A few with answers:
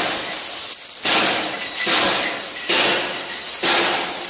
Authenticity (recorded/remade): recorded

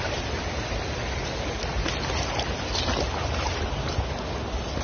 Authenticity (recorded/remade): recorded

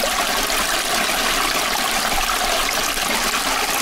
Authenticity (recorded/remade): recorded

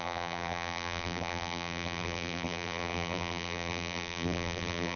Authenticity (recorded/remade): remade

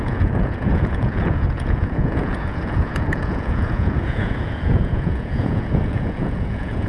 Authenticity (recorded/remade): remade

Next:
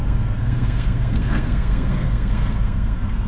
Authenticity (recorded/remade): remade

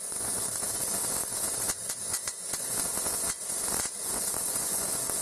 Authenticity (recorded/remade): remade